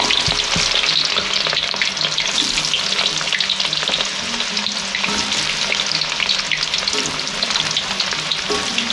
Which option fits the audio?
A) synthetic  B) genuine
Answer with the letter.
B